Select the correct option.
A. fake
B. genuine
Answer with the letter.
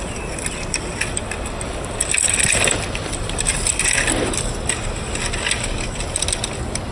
B